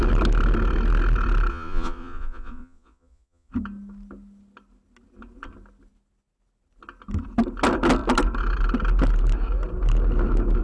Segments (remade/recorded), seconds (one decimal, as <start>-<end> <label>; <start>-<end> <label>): 0.0-1.5 recorded; 1.5-3.5 remade; 3.5-10.6 recorded

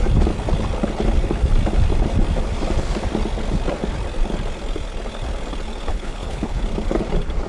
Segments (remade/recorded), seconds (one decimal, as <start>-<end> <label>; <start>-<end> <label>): 0.0-5.9 recorded; 5.9-6.6 remade; 6.6-7.5 recorded

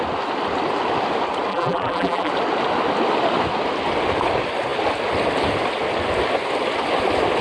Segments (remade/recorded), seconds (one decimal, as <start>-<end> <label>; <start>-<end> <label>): 0.0-1.5 recorded; 1.5-2.3 remade; 2.3-7.4 recorded

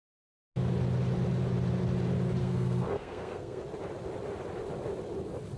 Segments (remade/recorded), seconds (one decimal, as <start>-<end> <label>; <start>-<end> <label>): 0.0-2.4 recorded; 2.4-3.6 remade; 3.6-5.6 recorded

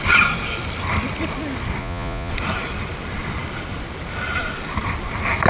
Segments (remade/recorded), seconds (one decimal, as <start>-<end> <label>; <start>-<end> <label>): 0.0-1.8 recorded; 1.8-2.3 remade; 2.3-5.5 recorded

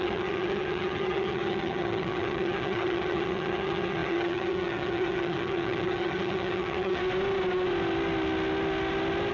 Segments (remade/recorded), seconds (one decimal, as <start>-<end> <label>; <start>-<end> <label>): 0.0-7.0 remade; 7.0-9.3 recorded

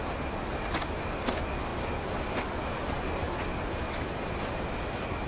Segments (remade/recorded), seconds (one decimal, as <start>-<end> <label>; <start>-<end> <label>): 0.0-5.3 recorded

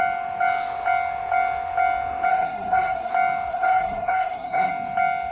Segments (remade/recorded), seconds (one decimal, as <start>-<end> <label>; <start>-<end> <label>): 0.0-2.3 recorded; 2.3-3.1 remade; 3.1-3.5 recorded; 3.5-4.7 remade; 4.7-5.3 recorded